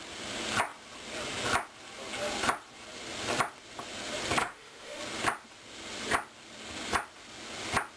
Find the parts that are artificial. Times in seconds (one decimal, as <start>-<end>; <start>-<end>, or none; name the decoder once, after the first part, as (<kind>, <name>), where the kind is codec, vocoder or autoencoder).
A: 4.4-5.0 (autoencoder, DAC-VAE)